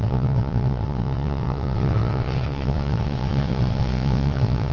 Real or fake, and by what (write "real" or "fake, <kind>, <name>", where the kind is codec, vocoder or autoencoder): fake, vocoder, WaveNeXt